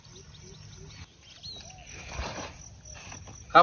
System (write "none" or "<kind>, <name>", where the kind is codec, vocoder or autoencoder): none